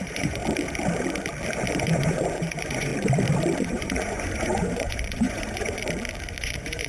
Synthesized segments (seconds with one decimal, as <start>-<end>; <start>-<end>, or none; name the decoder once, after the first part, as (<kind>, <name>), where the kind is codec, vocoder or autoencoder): 0.0-0.4 (vocoder, Vocos); 1.7-2.9; 3.6-5.8; 6.4-6.9